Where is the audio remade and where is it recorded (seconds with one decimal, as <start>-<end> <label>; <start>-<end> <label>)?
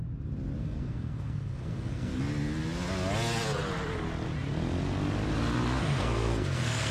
0.0-0.6 recorded; 0.6-2.1 remade; 2.1-5.8 recorded; 5.8-6.9 remade